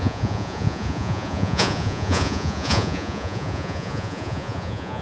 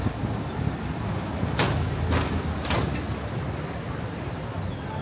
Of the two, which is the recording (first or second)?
second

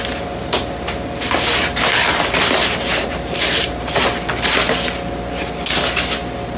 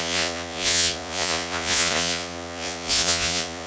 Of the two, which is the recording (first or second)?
first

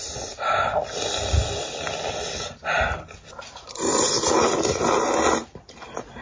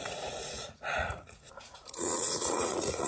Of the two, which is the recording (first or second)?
first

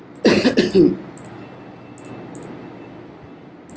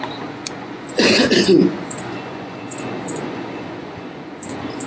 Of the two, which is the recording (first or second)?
first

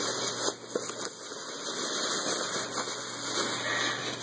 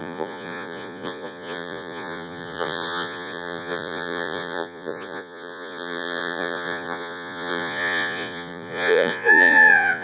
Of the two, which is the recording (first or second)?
first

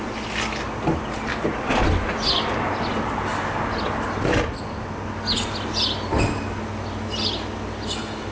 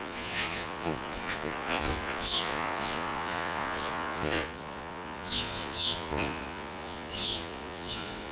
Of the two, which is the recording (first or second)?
first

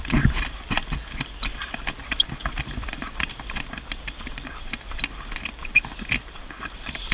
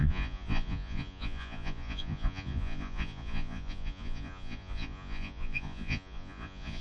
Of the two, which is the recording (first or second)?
first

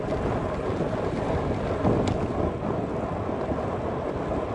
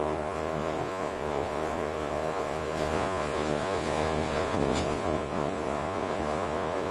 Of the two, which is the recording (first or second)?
first